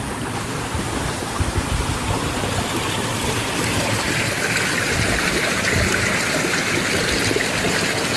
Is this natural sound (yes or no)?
yes